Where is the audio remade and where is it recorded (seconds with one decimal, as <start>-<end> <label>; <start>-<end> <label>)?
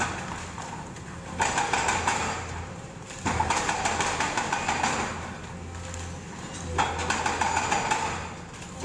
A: 0.0-0.6 recorded; 0.6-4.5 remade; 4.5-8.8 recorded